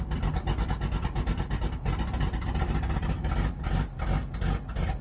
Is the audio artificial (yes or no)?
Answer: no